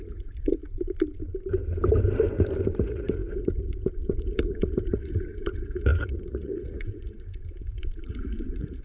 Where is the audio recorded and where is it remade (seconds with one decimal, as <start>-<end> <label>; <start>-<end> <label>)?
0.0-0.6 remade; 0.6-2.8 recorded; 2.8-8.8 remade